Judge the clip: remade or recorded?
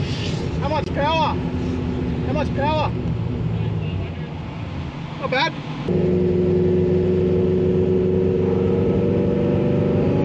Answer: recorded